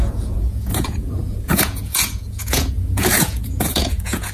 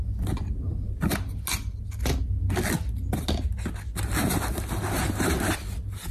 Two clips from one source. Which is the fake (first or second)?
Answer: first